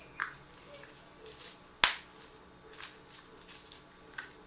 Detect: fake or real real